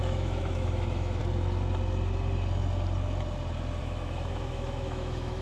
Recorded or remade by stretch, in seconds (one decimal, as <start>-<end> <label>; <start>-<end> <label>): 0.0-1.2 remade; 1.2-3.8 recorded; 3.8-5.4 remade